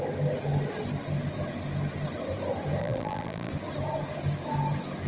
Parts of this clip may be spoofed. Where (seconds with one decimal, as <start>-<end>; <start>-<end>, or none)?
2.8-3.5

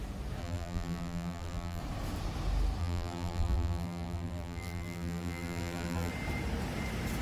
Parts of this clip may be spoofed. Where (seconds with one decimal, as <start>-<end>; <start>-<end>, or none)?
0.4-1.8; 2.8-6.1

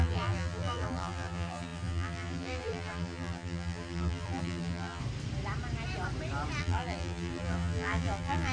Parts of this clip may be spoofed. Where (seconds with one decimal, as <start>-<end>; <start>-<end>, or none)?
0.0-5.0; 6.6-8.5

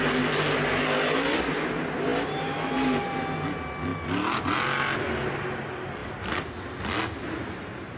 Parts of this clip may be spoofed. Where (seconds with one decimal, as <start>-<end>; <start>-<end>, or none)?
6.0-6.5

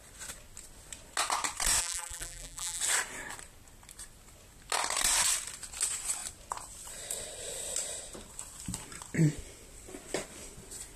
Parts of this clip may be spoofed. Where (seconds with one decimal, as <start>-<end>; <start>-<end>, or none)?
1.8-2.8